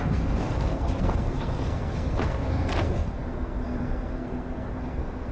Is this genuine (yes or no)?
no